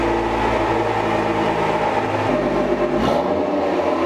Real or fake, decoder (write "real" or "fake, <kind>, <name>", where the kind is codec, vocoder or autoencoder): real